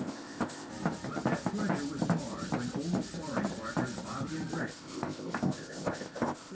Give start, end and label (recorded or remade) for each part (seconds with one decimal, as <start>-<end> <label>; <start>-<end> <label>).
0.0-0.7 remade; 0.7-4.6 recorded; 4.6-6.5 remade